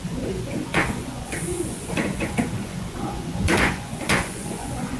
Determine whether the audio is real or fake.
fake